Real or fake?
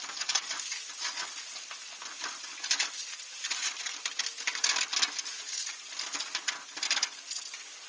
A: real